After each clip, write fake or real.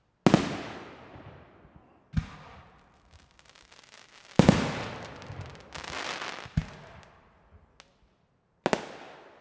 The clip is real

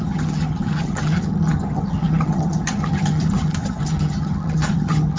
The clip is fake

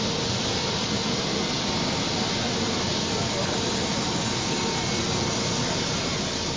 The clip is real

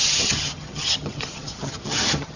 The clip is fake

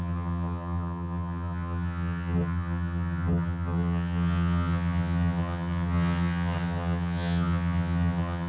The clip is fake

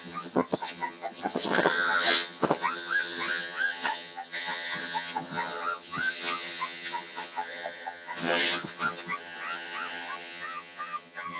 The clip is fake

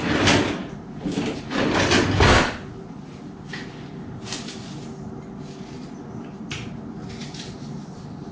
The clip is real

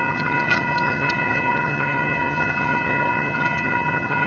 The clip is fake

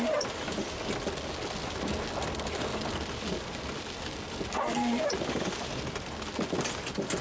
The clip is real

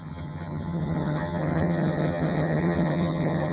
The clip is fake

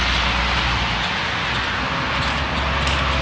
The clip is real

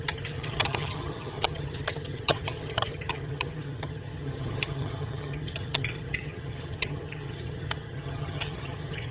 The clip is fake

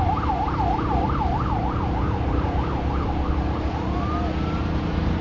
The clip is real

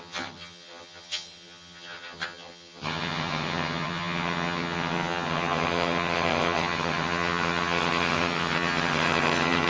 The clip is fake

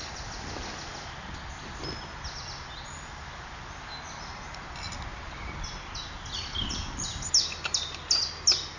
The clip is real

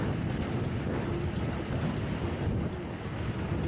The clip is real